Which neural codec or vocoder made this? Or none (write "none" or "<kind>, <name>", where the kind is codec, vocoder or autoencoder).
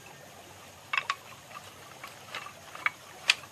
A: none